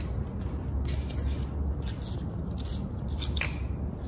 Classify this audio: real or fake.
real